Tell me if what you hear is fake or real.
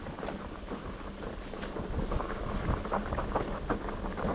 real